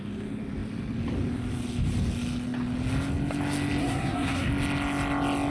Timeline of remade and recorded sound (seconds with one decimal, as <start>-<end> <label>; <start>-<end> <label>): 0.0-3.8 recorded; 3.8-4.5 remade; 4.5-5.5 recorded